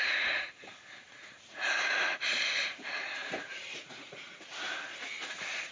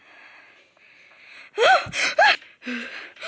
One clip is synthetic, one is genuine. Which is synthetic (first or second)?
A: first